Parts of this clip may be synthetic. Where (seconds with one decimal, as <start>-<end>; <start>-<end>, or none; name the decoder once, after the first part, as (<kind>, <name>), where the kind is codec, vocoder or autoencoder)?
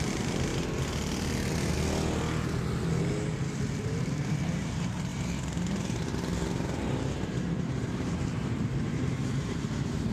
0.0-0.5 (vocoder, BigVGAN v2); 3.7-10.1